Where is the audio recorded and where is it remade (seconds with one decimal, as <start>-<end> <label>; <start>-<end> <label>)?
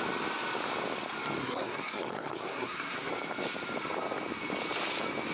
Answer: 0.0-1.4 recorded; 1.4-3.1 remade; 3.1-5.3 recorded